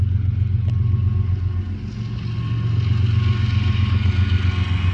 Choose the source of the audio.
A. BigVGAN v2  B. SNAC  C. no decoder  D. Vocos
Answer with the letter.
C